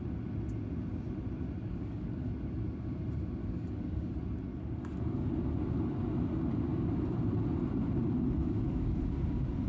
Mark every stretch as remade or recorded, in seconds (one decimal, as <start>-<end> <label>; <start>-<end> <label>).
0.0-1.6 recorded; 1.6-2.3 remade; 2.3-3.4 recorded; 3.4-4.1 remade; 4.1-4.5 recorded; 4.5-5.3 remade; 5.3-8.4 recorded; 8.4-9.0 remade; 9.0-9.7 recorded